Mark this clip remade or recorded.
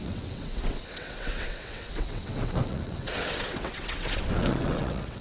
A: remade